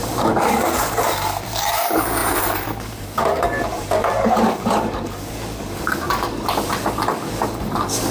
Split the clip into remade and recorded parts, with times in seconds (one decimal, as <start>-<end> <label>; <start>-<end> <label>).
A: 0.0-8.1 remade